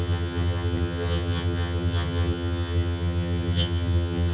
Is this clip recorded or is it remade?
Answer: remade